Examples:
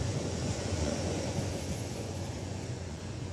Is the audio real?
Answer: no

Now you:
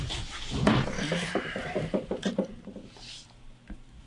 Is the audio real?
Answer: yes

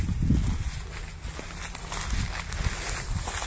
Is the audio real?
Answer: yes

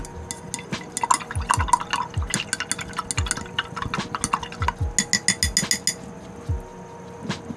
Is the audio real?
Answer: yes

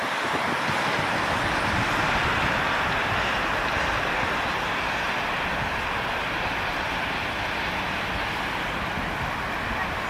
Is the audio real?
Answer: yes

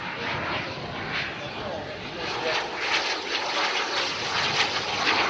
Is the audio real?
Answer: yes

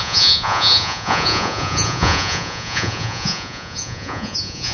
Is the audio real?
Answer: no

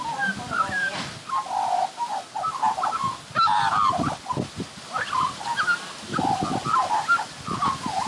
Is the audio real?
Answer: yes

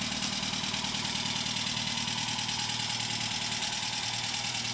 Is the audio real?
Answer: yes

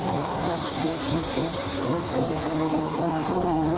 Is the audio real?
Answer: no